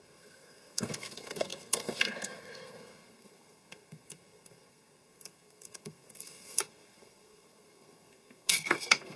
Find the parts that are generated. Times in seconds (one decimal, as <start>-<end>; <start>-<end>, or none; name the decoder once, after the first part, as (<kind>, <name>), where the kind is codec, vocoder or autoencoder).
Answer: 0.0-9.2 (codec, SNAC)